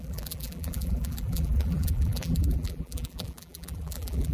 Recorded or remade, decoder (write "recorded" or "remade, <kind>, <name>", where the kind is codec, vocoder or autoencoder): remade, vocoder, BigVGAN v2